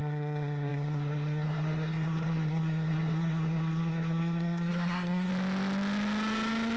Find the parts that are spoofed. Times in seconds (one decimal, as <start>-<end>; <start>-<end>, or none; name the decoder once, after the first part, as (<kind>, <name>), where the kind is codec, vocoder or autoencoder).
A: 0.0-5.3 (codec, SNAC)